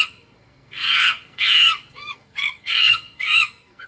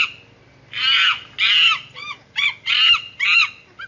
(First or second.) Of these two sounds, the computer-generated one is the first